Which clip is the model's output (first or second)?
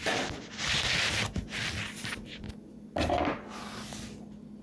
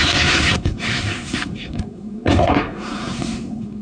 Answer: second